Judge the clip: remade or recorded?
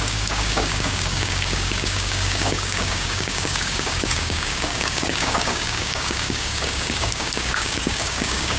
remade